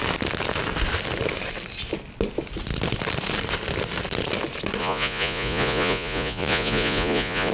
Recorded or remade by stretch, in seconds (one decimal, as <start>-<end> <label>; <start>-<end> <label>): 0.0-4.8 recorded; 4.8-7.5 remade